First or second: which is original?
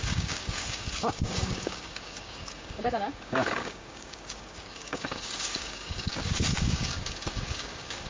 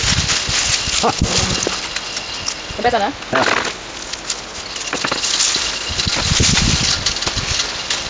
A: second